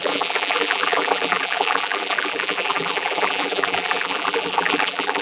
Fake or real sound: fake